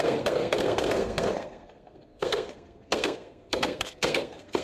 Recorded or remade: remade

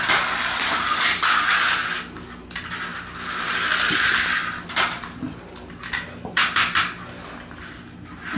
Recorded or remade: recorded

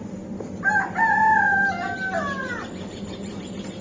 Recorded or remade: recorded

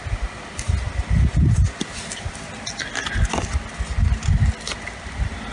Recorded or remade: recorded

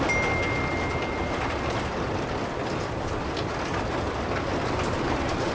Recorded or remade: recorded